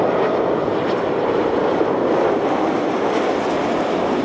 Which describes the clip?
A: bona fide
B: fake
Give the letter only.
A